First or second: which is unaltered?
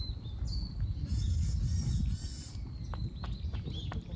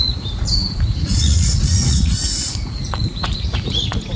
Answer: first